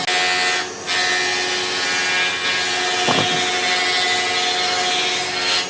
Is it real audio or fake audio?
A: real